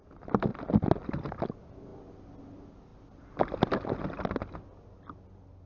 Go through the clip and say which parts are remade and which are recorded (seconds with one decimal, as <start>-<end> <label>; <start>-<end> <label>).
0.0-5.7 recorded